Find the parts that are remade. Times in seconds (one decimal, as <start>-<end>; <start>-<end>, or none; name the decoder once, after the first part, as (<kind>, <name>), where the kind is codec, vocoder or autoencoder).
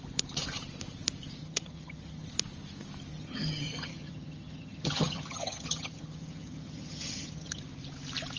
1.4-2.3 (vocoder, HiFi-GAN); 3.1-7.6